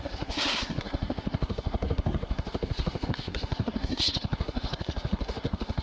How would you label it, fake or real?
fake